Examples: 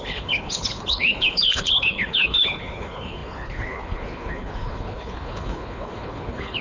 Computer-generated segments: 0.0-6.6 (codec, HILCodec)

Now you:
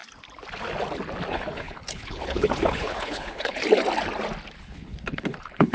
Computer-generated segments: 1.3-3.6 (codec, HILCodec); 4.6-5.7

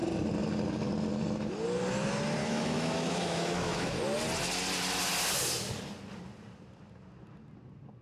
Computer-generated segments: 2.4-3.9 (autoencoder, DAC-VAE)

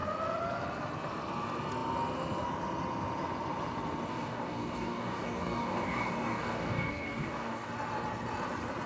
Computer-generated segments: 4.1-7.7 (codec, DAC)

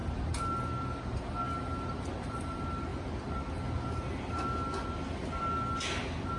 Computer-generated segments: none